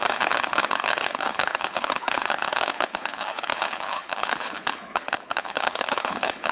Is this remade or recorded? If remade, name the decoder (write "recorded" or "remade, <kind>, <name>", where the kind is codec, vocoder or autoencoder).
remade, codec, HILCodec